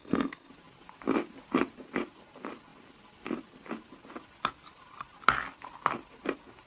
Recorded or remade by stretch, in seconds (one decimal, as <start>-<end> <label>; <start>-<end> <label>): 0.0-0.5 remade; 0.5-6.7 recorded